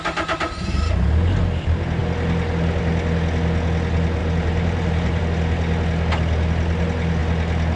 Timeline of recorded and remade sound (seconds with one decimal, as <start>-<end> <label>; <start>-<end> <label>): 0.0-4.2 recorded; 4.2-5.2 remade; 5.2-7.8 recorded